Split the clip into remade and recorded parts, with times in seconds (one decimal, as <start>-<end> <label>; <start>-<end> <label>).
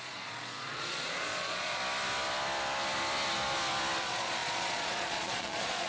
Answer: 0.0-1.8 remade; 1.8-4.0 recorded; 4.0-5.9 remade